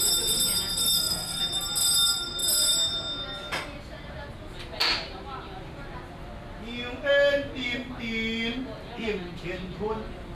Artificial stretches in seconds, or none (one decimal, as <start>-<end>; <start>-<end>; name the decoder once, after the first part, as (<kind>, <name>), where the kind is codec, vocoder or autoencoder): 0.8-1.4 (codec, SNAC)